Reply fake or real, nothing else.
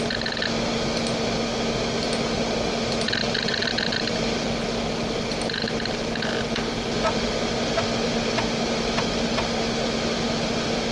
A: real